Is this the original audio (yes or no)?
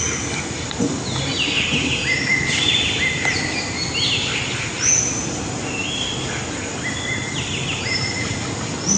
yes